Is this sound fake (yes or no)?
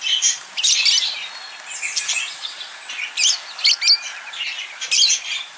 no